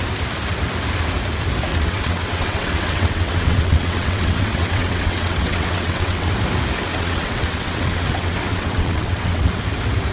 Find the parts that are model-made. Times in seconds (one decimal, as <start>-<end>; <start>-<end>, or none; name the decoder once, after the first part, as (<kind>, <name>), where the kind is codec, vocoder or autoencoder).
1.7-6.3 (vocoder, WaveNeXt); 6.9-9.6